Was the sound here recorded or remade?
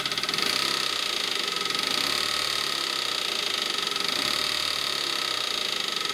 recorded